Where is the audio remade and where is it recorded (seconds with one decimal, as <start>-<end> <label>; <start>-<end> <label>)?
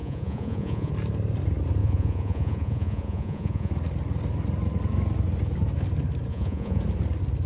0.0-0.9 remade; 0.9-1.8 recorded; 1.8-3.7 remade; 3.7-6.3 recorded; 6.3-6.8 remade; 6.8-7.5 recorded